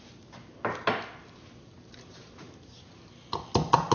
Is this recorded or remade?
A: recorded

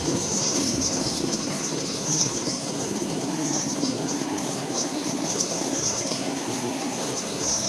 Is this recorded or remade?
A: remade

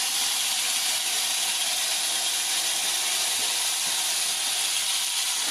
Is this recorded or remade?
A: recorded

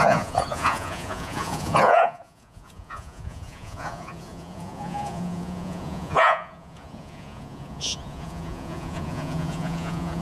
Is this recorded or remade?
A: remade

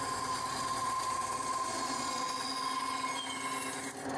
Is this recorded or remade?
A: recorded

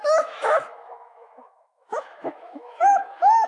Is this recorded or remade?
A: remade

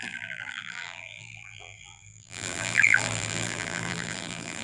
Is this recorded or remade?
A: remade